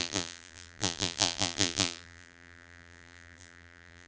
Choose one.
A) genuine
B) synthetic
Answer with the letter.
B